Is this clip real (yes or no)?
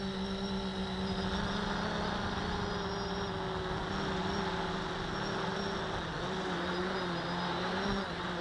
yes